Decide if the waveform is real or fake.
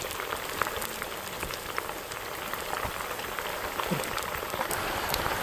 real